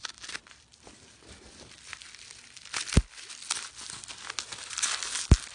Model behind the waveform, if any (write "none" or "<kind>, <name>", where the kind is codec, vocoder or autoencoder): none